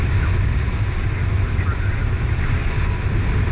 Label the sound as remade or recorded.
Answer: recorded